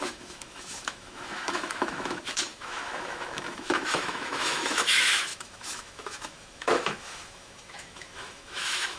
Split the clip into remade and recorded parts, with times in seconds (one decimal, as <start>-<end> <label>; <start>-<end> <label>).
0.0-9.0 remade